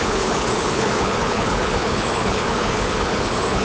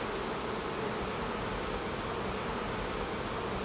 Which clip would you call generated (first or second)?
first